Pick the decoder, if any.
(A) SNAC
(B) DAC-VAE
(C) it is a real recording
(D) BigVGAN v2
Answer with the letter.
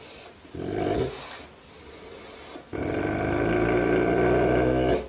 C